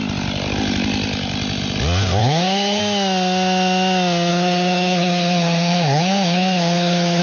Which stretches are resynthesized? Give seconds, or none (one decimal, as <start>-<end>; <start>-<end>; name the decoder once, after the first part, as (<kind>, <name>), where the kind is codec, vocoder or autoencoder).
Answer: 2.2-2.8 (codec, HILCodec); 4.3-7.2